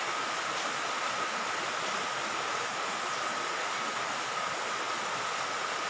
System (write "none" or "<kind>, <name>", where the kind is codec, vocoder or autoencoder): none